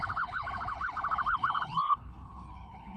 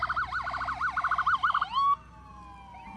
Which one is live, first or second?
second